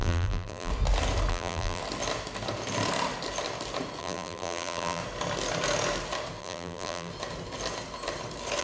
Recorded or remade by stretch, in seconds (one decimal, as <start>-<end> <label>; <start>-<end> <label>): 0.0-0.7 remade; 0.7-1.3 recorded; 1.3-1.8 remade; 1.8-4.0 recorded; 4.0-5.0 remade; 5.0-6.4 recorded; 6.4-7.1 remade; 7.1-8.6 recorded

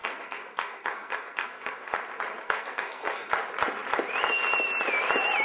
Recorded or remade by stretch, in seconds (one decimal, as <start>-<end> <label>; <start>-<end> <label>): 0.0-2.0 remade; 2.0-2.4 recorded; 2.4-3.3 remade; 3.3-5.4 recorded

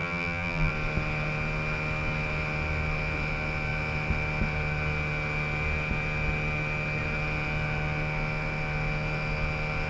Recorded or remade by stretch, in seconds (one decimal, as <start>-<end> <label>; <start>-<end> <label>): 0.0-0.7 remade; 0.7-9.9 recorded

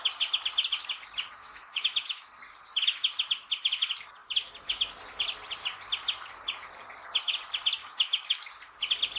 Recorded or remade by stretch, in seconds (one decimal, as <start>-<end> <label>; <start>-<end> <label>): 0.0-1.4 recorded; 1.4-2.3 remade; 2.3-7.8 recorded; 7.8-8.4 remade; 8.4-9.2 recorded

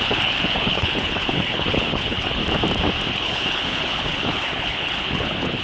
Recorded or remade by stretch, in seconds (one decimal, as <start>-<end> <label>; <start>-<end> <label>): 0.0-2.4 remade; 2.4-3.1 recorded; 3.1-5.6 remade

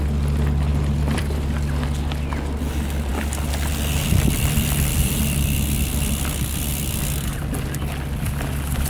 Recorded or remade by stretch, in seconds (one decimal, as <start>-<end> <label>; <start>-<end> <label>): 0.0-0.7 recorded; 0.7-1.5 remade; 1.5-3.1 recorded; 3.1-6.7 remade; 6.7-8.9 recorded

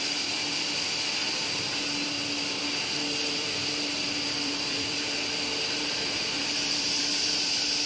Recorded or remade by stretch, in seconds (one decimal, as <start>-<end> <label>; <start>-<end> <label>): 0.0-1.2 remade; 1.2-3.3 recorded; 3.3-7.9 remade

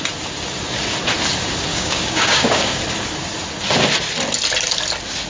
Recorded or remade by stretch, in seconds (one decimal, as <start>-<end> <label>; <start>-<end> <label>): 0.0-1.7 recorded; 1.7-2.8 remade; 2.8-5.3 recorded